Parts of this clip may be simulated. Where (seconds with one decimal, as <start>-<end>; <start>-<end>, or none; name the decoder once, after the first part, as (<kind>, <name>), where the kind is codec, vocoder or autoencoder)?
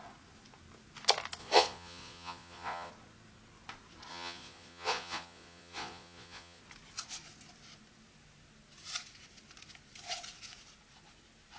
1.4-2.9 (vocoder, Vocos); 4.1-6.6